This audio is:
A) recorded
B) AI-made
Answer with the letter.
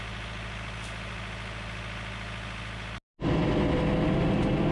A